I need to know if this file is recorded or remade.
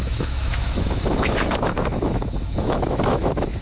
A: remade